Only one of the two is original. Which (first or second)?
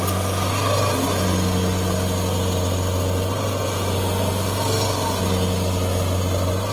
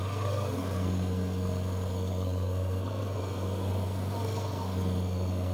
first